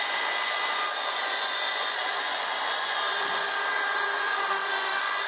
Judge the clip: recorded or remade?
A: remade